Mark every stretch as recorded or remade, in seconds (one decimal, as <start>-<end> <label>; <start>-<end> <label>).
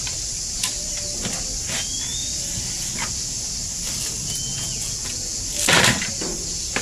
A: 0.0-4.5 recorded; 4.5-5.4 remade; 5.4-6.8 recorded